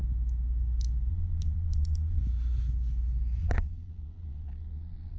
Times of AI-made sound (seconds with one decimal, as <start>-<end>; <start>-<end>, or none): 1.1-2.2; 3.4-5.2